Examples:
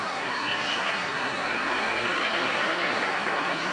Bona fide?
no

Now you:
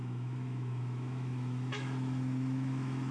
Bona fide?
no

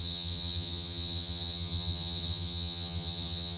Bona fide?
no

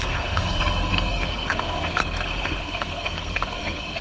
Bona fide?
no